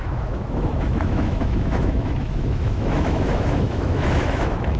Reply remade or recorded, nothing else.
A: remade